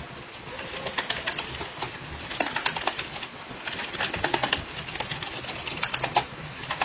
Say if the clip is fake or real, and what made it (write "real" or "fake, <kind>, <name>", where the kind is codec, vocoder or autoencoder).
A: real